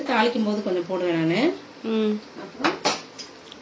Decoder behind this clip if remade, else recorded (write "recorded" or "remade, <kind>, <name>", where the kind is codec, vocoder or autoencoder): recorded